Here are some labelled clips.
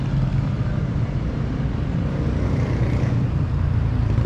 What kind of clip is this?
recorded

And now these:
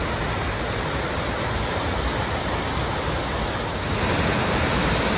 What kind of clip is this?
recorded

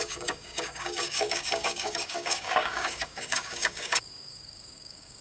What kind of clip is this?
remade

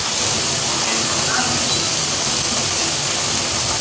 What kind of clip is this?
recorded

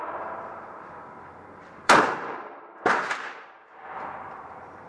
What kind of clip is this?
remade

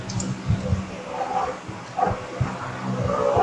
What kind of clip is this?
recorded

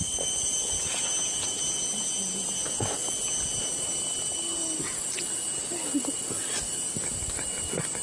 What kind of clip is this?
recorded